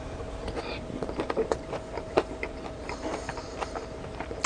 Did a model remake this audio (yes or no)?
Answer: yes